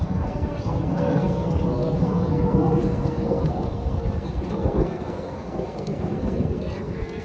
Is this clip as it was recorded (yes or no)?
no